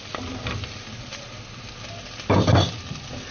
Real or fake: fake